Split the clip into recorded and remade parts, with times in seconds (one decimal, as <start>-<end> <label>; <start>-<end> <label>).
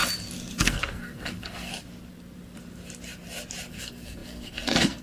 0.0-0.6 recorded; 0.6-1.7 remade; 1.7-3.7 recorded; 3.7-5.0 remade